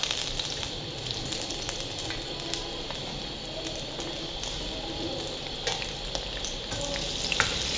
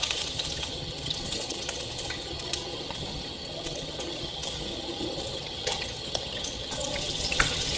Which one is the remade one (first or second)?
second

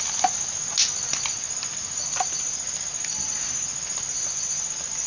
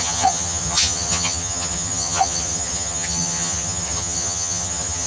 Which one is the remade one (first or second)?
second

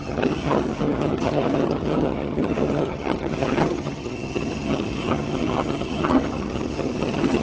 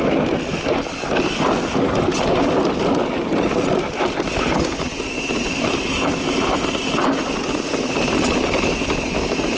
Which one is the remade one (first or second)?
first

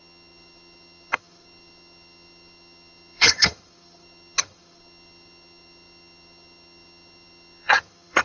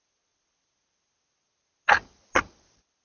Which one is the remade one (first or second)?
first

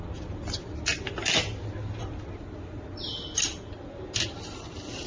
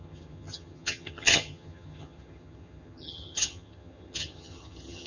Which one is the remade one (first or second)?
second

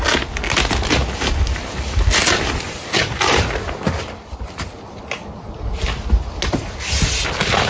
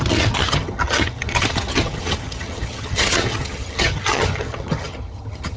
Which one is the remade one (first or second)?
second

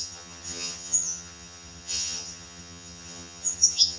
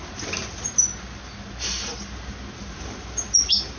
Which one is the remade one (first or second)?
first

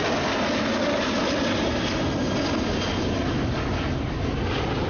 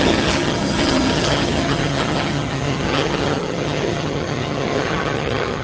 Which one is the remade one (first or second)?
second